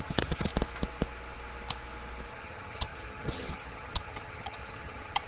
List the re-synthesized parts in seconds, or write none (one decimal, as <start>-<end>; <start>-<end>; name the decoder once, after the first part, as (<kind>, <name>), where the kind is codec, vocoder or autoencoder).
0.0-0.5 (vocoder, HiFi-GAN); 2.3-5.3